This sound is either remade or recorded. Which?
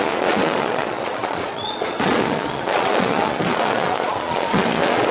remade